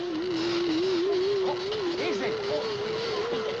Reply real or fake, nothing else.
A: real